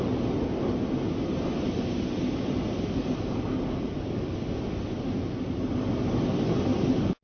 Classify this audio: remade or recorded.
recorded